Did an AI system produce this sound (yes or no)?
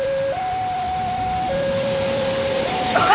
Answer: yes